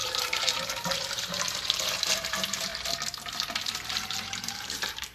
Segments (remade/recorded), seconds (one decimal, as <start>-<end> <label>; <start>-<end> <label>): 0.0-2.7 remade; 2.7-3.6 recorded; 3.6-5.1 remade